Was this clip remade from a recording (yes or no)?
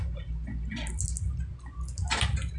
no